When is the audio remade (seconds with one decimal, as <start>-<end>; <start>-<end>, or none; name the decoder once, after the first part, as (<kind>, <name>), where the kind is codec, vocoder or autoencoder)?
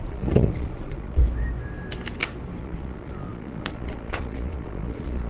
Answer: 0.0-1.2 (vocoder, Vocos); 2.6-5.3